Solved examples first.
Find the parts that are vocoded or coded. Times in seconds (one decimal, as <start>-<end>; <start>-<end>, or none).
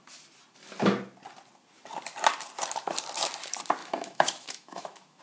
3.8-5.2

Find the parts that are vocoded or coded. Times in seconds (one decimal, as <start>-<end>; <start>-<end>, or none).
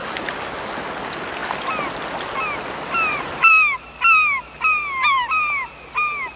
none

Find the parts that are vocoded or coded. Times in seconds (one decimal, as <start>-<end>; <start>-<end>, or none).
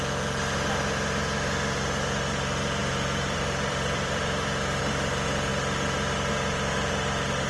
2.8-4.8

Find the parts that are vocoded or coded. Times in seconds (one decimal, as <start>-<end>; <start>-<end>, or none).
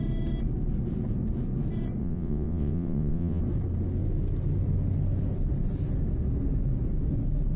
2.0-3.4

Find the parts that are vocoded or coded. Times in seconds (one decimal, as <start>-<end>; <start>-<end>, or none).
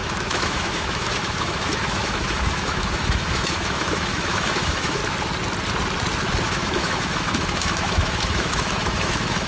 0.0-5.0; 6.4-9.5